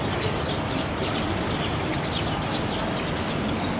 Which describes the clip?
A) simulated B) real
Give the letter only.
B